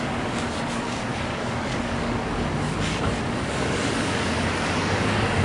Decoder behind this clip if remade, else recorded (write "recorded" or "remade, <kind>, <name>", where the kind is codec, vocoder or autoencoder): remade, codec, DAC